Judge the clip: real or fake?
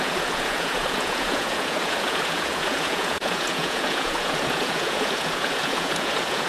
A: fake